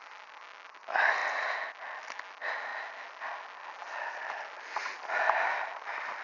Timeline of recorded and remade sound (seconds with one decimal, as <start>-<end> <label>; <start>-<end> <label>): 0.0-6.2 recorded